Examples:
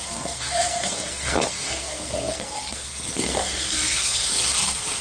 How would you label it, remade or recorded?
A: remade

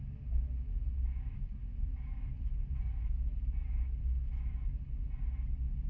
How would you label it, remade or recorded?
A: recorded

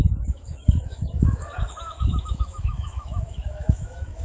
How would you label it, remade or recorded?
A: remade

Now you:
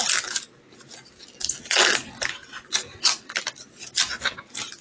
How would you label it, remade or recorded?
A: recorded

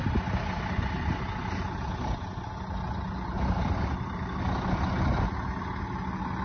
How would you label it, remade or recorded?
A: recorded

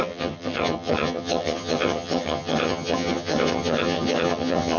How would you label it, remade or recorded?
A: remade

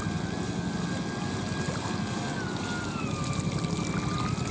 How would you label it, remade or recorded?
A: recorded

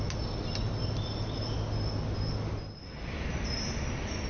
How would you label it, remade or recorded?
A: recorded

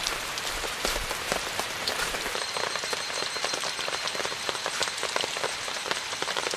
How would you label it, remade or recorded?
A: remade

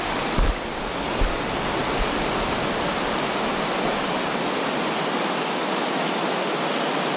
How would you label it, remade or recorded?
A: recorded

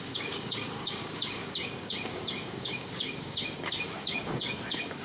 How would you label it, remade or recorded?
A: remade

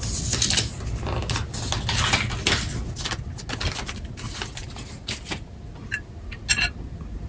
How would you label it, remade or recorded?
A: recorded